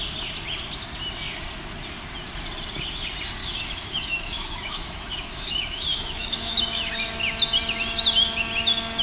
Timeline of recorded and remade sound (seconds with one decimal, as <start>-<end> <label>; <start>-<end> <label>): 0.0-3.4 recorded; 3.4-6.9 remade; 6.9-9.0 recorded

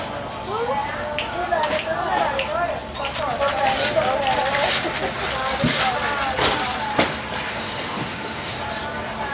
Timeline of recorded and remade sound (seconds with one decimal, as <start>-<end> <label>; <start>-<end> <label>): 0.0-7.5 recorded; 7.5-8.5 remade; 8.5-9.3 recorded

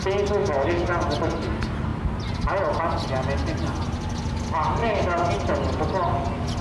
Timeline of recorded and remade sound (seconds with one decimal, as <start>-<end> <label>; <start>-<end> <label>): 0.0-0.4 recorded; 0.4-0.9 remade; 0.9-4.8 recorded; 4.8-5.3 remade; 5.3-6.6 recorded